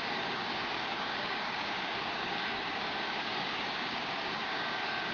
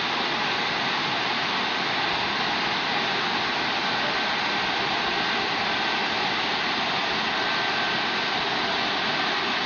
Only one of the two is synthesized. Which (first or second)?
first